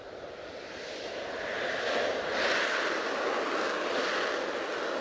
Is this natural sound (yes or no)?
yes